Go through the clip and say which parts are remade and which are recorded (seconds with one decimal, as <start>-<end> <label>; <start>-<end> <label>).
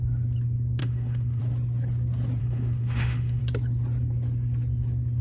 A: 0.0-0.8 recorded; 0.8-1.4 remade; 1.4-2.4 recorded; 2.4-3.4 remade; 3.4-5.2 recorded